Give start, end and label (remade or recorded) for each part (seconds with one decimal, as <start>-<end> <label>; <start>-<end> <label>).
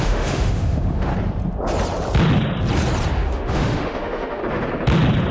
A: 0.0-1.1 remade; 1.1-3.1 recorded; 3.1-4.4 remade; 4.4-5.3 recorded